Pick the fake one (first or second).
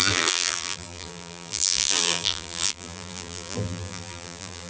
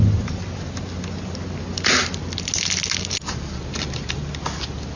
first